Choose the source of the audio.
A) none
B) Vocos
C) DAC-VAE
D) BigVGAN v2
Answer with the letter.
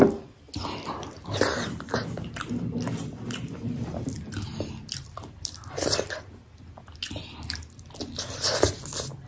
A